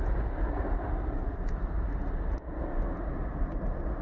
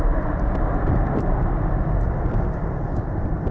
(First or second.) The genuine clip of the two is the first